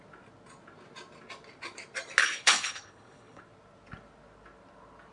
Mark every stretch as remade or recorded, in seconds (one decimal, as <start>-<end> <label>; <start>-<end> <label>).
0.0-2.2 recorded; 2.2-3.4 remade; 3.4-5.1 recorded